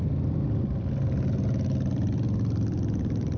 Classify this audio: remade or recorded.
recorded